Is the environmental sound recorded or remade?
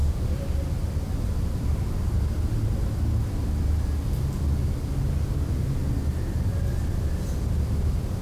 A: recorded